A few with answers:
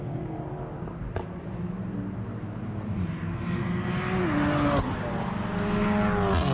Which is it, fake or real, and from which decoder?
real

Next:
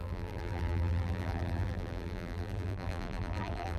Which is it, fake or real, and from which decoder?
fake, vocoder, BigVGAN v2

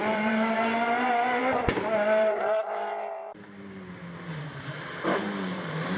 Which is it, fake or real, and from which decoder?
fake, vocoder, BigVGAN v2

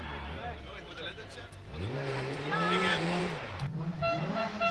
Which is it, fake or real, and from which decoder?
fake, vocoder, BigVGAN v2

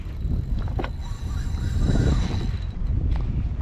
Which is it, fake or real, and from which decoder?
real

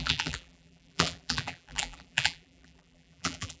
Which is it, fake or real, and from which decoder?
fake, vocoder, BigVGAN v2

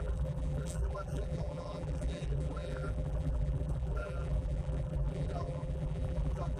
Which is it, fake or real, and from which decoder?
fake, vocoder, BigVGAN v2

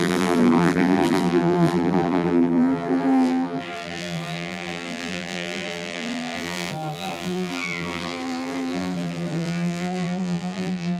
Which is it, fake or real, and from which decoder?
fake, vocoder, BigVGAN v2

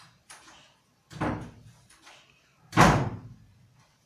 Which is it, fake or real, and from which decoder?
fake, vocoder, BigVGAN v2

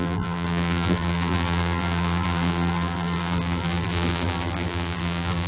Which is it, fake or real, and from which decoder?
fake, vocoder, BigVGAN v2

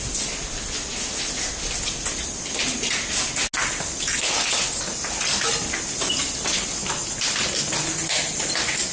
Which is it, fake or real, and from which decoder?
real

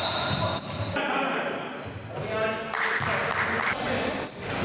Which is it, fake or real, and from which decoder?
real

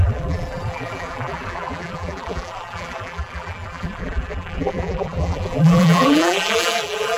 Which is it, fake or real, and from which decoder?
fake, vocoder, BigVGAN v2